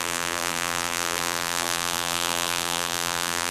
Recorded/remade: remade